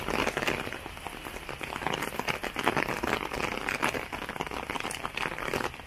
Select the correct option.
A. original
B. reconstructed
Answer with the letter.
A